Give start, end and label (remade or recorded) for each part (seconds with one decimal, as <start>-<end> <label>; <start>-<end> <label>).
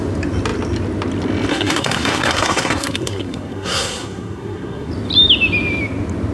0.0-1.5 recorded; 1.5-4.9 remade; 4.9-6.3 recorded